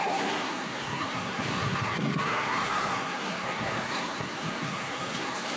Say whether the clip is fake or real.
fake